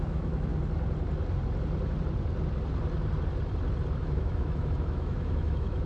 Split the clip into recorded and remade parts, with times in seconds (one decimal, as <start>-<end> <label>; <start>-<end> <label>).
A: 0.0-0.5 remade; 0.5-4.0 recorded; 4.0-5.9 remade